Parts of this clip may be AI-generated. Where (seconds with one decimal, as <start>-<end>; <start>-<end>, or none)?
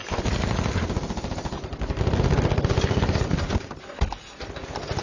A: none